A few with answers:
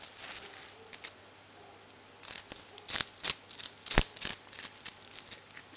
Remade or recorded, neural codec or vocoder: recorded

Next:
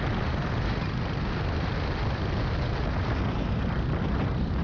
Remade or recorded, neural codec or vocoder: recorded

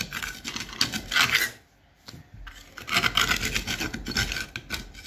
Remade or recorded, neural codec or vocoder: recorded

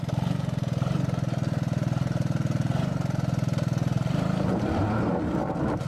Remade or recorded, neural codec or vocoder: remade, vocoder, BigVGAN v2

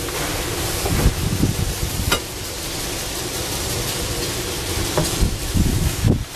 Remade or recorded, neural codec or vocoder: remade, vocoder, BigVGAN v2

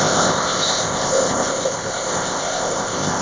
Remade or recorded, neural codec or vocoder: remade, codec, ZipCodec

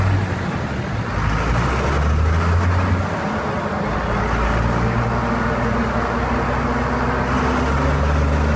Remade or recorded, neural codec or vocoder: recorded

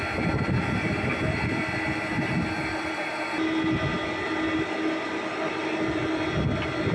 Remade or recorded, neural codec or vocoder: recorded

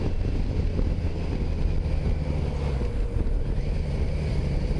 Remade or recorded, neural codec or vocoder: recorded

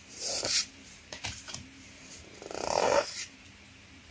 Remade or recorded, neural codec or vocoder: remade, vocoder, BigVGAN v2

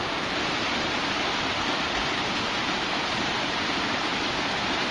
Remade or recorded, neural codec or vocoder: remade, vocoder, BigVGAN v2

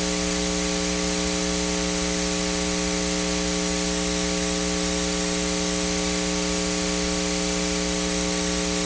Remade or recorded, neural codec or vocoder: recorded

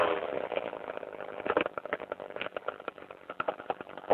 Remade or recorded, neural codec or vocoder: remade, vocoder, BigVGAN v2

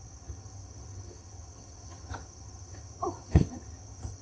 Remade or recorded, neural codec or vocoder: remade, vocoder, HiFi-GAN